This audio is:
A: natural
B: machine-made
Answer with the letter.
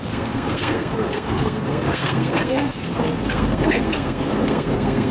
B